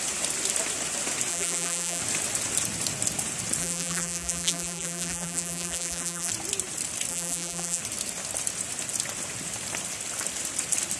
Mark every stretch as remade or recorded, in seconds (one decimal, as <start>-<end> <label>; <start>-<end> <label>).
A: 0.0-1.3 recorded; 1.3-2.0 remade; 2.0-3.6 recorded; 3.6-6.3 remade; 6.3-7.1 recorded; 7.1-7.8 remade; 7.8-11.0 recorded